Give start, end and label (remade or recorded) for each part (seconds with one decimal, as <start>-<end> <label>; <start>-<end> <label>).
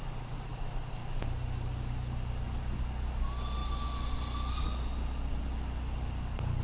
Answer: 0.0-6.6 recorded